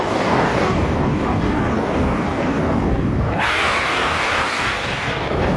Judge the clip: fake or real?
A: fake